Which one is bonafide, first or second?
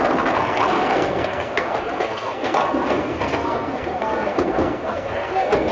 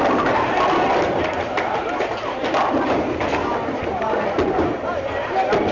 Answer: second